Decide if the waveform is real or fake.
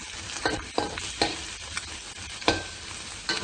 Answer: real